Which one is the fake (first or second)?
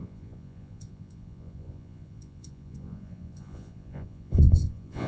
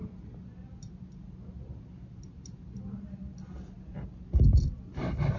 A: first